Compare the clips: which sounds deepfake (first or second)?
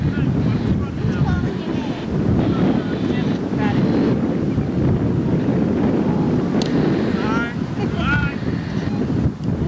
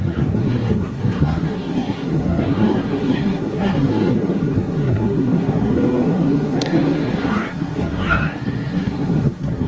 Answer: second